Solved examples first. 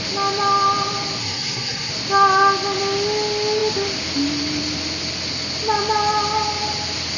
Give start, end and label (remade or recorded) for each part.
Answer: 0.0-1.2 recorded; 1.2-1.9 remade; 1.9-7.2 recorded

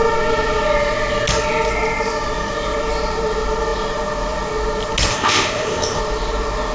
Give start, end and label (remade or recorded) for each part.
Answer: 0.0-5.1 recorded; 5.1-6.0 remade; 6.0-6.7 recorded

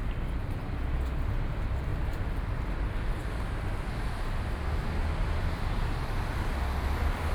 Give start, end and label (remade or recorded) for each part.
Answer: 0.0-7.3 recorded

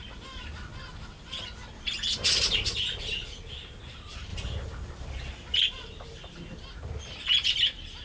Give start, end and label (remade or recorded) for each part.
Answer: 0.0-8.0 recorded

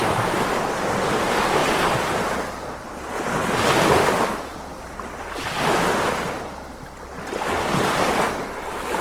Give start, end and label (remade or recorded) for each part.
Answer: 0.0-1.6 recorded; 1.6-2.9 remade; 2.9-4.7 recorded; 4.7-5.5 remade; 5.5-9.0 recorded